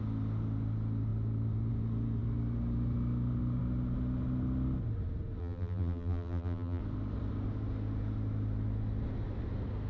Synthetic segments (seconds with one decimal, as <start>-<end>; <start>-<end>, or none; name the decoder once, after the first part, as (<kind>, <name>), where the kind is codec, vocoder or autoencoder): 5.4-6.8 (vocoder, BigVGAN v2)